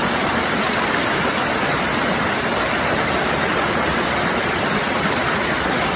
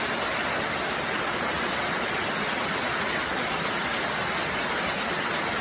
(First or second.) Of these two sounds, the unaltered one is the second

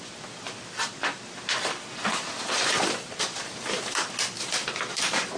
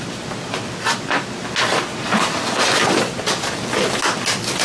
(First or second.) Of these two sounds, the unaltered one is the second